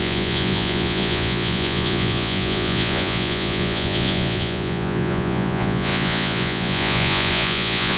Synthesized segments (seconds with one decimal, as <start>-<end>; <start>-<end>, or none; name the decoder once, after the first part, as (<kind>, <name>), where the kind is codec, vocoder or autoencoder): 0.0-8.0 (vocoder, Vocos)